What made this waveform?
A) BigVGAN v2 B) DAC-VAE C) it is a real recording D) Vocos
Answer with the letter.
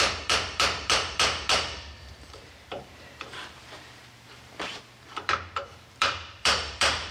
A